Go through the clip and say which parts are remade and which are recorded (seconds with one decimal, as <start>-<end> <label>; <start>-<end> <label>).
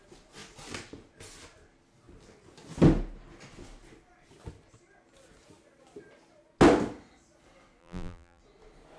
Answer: 0.0-7.8 recorded; 7.8-8.4 remade; 8.4-9.0 recorded